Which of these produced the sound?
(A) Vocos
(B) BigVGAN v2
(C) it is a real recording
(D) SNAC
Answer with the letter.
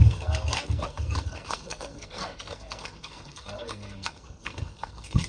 D